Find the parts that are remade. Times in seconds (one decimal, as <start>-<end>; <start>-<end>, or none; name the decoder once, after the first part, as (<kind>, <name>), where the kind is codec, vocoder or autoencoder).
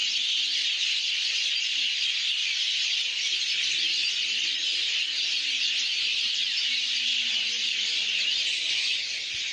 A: 6.1-7.3 (vocoder, BigVGAN v2)